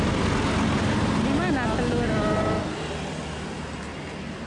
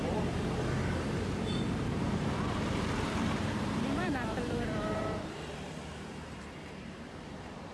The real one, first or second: first